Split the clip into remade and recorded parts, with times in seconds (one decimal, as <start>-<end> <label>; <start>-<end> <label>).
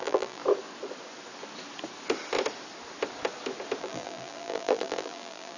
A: 0.0-0.4 remade; 0.4-3.8 recorded; 3.8-5.6 remade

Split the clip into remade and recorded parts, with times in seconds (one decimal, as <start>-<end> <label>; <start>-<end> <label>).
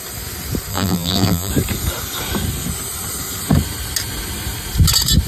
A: 0.0-0.7 recorded; 0.7-1.5 remade; 1.5-5.3 recorded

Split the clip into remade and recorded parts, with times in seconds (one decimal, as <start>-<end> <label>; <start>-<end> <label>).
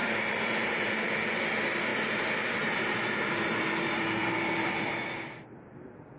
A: 0.0-1.4 remade; 1.4-1.9 recorded; 1.9-5.6 remade; 5.6-6.2 recorded